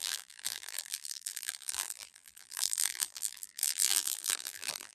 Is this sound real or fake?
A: fake